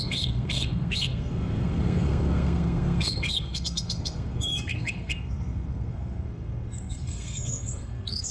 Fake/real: fake